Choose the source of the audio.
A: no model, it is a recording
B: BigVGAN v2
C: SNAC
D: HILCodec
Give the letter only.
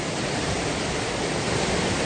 A